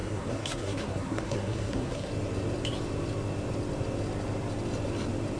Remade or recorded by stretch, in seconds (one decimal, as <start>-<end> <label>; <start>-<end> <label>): 0.0-2.1 remade; 2.1-5.4 recorded